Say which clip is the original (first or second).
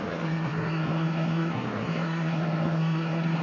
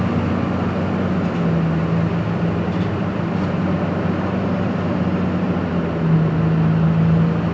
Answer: second